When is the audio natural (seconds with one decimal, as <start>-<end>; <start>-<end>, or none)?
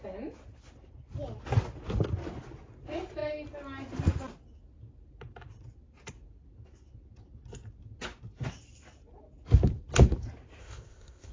0.0-10.6